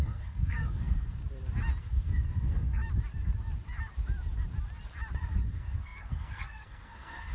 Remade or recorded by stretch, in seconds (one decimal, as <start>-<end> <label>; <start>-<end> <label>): 0.0-1.2 remade; 1.2-1.8 recorded; 1.8-2.8 remade; 2.8-5.5 recorded; 5.5-7.3 remade

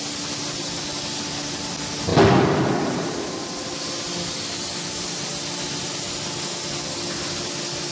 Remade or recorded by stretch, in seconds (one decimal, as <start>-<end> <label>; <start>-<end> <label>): 0.0-7.9 recorded

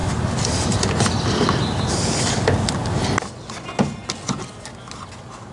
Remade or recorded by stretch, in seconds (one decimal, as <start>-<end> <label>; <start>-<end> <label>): 0.0-5.5 recorded

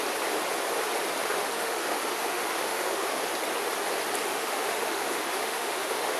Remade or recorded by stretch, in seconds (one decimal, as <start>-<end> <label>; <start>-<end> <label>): 0.0-1.2 recorded; 1.2-3.2 remade; 3.2-4.3 recorded; 4.3-6.2 remade